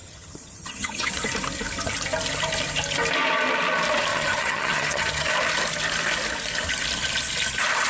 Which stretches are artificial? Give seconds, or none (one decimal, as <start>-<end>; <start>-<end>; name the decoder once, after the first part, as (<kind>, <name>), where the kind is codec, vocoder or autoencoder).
0.0-1.1 (vocoder, HiFi-GAN); 4.1-5.3